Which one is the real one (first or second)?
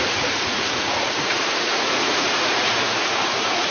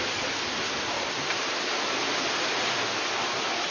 second